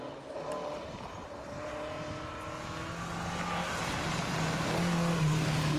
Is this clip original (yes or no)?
yes